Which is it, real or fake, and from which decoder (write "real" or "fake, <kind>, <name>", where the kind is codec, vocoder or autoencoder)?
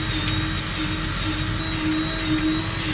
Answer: real